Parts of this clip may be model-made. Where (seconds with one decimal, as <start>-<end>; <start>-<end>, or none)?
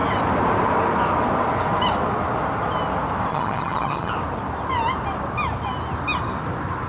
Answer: 3.3-4.1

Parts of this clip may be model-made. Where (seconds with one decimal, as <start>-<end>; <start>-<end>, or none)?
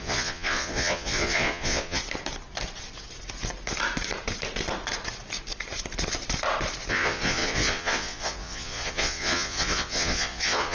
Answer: 0.0-2.0; 6.9-10.7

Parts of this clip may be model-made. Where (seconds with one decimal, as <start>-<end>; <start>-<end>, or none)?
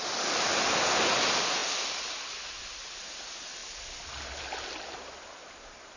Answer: none